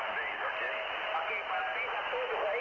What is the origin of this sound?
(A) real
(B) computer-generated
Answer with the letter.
A